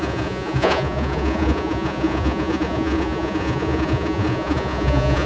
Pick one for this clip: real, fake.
fake